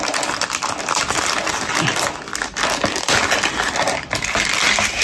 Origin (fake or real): real